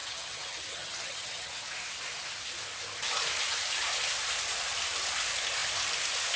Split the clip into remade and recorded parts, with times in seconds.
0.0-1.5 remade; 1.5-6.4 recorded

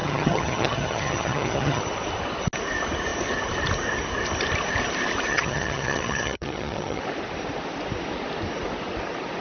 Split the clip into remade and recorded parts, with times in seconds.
0.0-1.8 remade; 1.8-5.3 recorded; 5.3-7.0 remade; 7.0-9.4 recorded